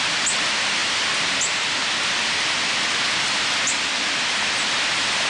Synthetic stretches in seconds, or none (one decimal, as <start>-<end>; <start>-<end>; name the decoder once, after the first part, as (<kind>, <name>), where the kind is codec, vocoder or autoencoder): none